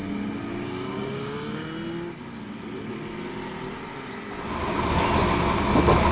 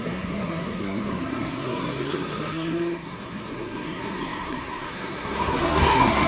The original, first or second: first